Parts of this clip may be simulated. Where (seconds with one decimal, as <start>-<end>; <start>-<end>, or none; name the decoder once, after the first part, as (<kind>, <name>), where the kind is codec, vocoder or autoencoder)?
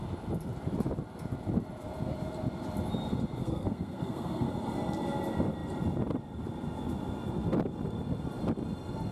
3.4-4.5 (codec, SNAC)